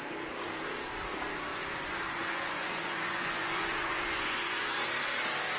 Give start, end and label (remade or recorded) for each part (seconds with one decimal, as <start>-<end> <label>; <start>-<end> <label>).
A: 0.0-1.5 recorded; 1.5-4.9 remade; 4.9-5.6 recorded